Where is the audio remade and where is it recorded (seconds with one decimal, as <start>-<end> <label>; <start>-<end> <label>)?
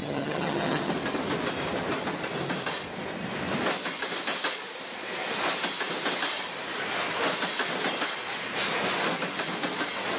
0.0-0.9 remade; 0.9-10.2 recorded